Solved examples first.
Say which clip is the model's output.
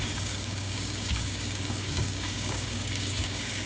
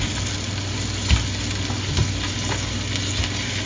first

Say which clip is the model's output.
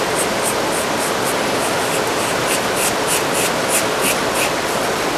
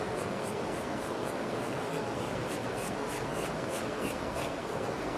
second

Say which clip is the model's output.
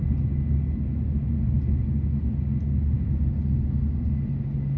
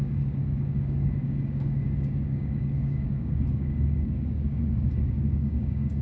second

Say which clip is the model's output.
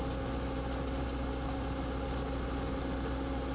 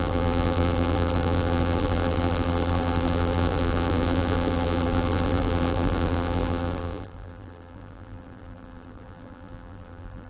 second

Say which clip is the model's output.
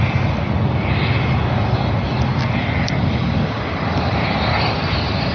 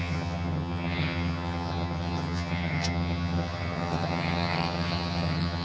second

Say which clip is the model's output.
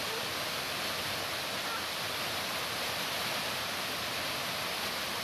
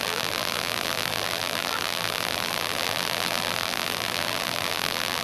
second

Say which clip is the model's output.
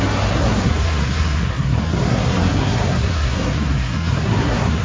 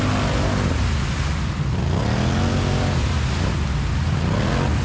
first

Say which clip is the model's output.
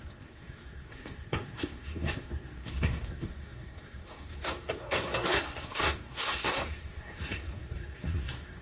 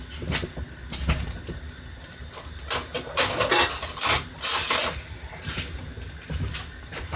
first